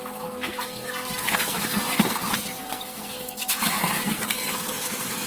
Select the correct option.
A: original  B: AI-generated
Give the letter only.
B